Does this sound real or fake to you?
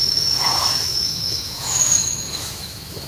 fake